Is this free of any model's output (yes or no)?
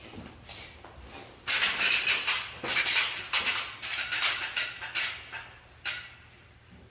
yes